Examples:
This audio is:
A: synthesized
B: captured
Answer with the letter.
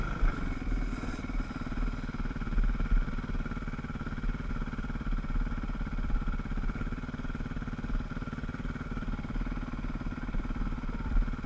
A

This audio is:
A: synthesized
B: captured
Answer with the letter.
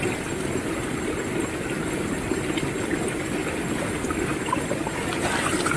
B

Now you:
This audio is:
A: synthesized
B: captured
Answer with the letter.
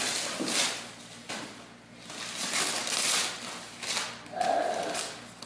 B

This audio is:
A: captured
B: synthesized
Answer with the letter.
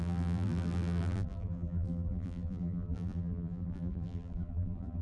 B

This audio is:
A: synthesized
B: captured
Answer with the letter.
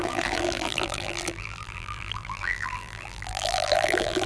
A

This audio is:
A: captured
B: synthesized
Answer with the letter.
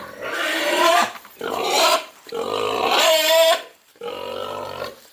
B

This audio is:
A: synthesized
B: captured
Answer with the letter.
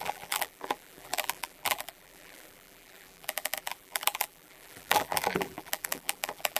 A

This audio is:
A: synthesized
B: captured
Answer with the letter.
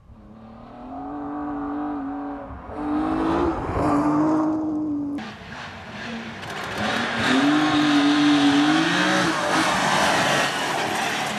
B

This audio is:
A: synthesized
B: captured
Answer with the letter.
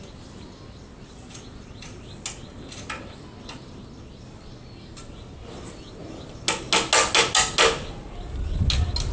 B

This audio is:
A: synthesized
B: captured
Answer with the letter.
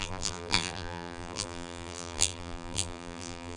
A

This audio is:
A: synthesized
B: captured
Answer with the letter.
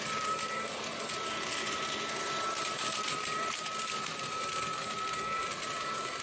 B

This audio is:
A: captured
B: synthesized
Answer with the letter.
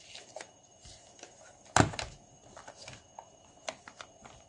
A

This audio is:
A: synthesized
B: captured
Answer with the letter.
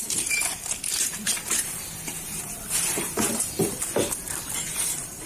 A